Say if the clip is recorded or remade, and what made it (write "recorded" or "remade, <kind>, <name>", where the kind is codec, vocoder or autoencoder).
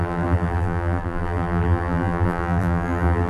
remade, vocoder, BigVGAN v2